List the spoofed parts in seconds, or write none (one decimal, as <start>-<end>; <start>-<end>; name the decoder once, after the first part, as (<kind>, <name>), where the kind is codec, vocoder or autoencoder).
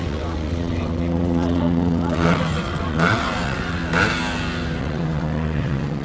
0.0-3.8 (vocoder, WaveNeXt); 4.8-6.0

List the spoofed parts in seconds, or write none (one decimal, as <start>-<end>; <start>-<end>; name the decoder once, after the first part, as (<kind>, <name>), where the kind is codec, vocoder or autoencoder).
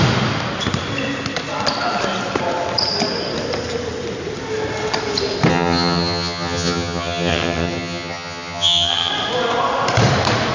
5.5-9.1 (vocoder, HiFi-GAN)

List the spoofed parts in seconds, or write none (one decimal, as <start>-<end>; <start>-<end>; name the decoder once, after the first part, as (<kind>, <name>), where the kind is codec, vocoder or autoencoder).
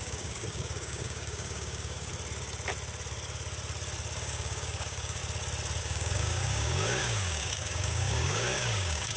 0.0-2.1 (codec, DAC); 4.2-5.2; 5.8-9.2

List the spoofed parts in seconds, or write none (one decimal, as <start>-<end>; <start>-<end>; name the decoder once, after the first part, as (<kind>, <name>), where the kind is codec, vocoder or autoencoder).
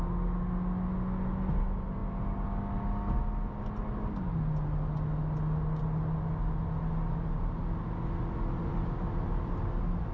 none